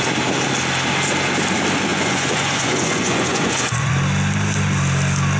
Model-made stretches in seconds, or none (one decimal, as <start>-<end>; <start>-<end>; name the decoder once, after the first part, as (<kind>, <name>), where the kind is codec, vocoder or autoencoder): 1.9-3.9 (vocoder, Vocos)